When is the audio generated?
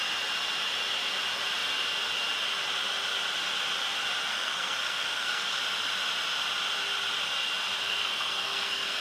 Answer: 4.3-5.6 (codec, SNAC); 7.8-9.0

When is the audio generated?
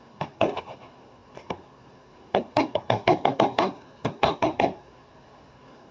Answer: 0.0-5.9 (codec, SNAC)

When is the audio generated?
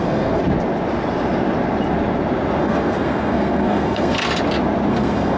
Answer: 0.0-0.4 (codec, SNAC); 2.6-4.2; 4.9-5.4